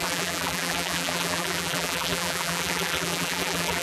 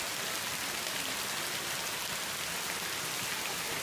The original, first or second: second